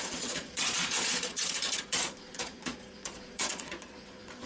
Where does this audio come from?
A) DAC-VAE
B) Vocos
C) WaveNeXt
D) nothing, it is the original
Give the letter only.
B